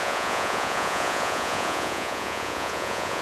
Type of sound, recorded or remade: remade